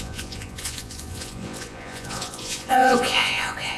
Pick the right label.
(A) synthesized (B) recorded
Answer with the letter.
A